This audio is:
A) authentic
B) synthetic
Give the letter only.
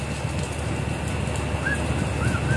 A